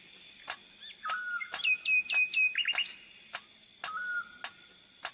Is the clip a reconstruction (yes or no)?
no